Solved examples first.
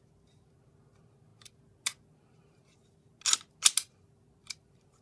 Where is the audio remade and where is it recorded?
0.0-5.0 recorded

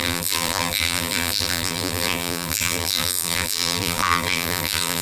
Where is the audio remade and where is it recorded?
0.0-5.0 remade

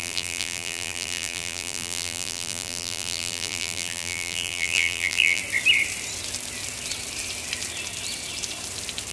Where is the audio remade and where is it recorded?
0.0-5.4 remade; 5.4-9.1 recorded

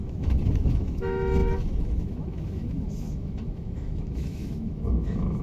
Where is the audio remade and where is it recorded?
0.0-5.4 remade

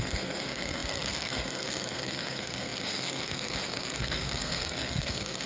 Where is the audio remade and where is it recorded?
0.0-5.5 remade